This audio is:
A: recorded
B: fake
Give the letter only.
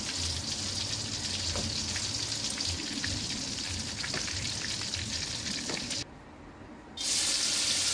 A